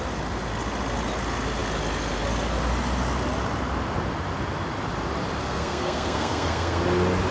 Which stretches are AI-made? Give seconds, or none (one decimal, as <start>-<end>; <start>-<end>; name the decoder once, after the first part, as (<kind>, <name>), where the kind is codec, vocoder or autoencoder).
5.4-6.8 (codec, SNAC)